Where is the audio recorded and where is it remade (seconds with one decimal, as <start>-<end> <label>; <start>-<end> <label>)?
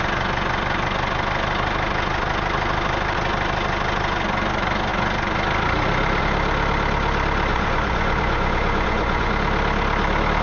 0.0-7.5 recorded; 7.5-9.3 remade; 9.3-10.4 recorded